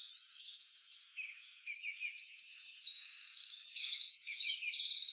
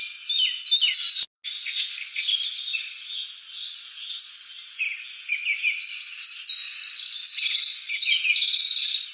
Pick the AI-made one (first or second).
first